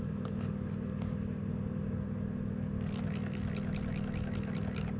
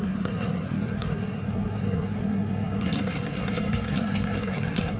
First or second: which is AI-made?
second